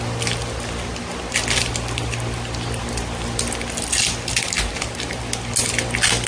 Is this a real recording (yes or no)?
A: yes